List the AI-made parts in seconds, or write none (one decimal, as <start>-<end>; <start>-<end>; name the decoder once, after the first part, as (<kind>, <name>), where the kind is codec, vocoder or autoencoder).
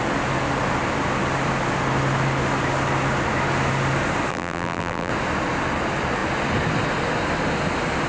4.3-5.1 (vocoder, BigVGAN v2)